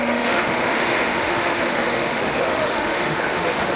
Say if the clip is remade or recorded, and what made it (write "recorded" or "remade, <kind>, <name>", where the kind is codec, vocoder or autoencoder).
remade, autoencoder, DAC-VAE